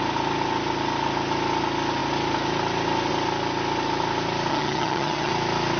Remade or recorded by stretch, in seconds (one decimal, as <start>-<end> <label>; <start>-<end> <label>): 0.0-4.5 recorded; 4.5-5.3 remade; 5.3-5.8 recorded